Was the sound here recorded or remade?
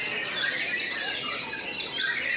recorded